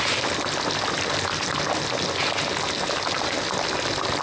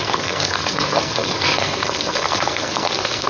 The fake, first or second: second